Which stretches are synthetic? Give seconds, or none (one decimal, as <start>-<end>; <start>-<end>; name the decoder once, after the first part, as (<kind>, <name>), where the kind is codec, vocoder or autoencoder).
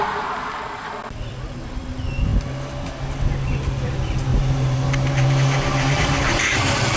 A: 4.3-7.0 (vocoder, BigVGAN v2)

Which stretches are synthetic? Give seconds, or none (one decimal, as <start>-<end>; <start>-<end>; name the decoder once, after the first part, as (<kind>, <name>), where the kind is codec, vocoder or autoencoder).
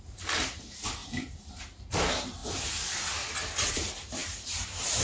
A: 0.0-2.4 (vocoder, BigVGAN v2); 3.7-5.0